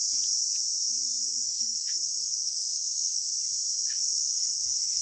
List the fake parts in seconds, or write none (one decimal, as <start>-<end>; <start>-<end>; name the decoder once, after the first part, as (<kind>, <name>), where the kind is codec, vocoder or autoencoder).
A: 1.2-3.3 (codec, SNAC); 3.9-5.0